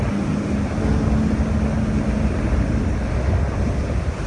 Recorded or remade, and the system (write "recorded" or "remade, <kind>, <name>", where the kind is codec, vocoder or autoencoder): recorded